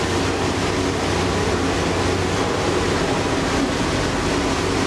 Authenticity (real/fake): real